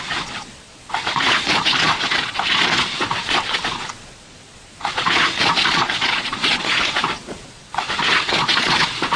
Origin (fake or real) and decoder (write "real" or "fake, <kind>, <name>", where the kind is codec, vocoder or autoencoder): fake, vocoder, Vocos